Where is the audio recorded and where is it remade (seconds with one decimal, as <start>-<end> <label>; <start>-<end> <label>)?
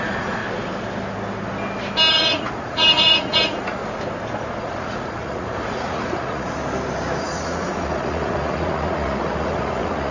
0.0-0.4 remade; 0.4-2.1 recorded; 2.1-3.8 remade; 3.8-4.6 recorded; 4.6-6.6 remade; 6.6-7.2 recorded; 7.2-10.1 remade